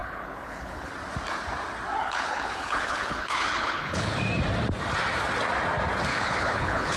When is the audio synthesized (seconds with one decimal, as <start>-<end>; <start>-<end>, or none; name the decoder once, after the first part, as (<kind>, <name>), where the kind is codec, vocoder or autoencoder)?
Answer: 0.0-0.9 (codec, HILCodec); 2.0-4.2; 6.1-7.0